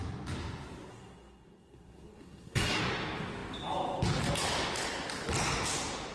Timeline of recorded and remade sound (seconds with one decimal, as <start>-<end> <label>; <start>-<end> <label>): 0.0-0.9 recorded; 0.9-2.8 remade; 2.8-6.1 recorded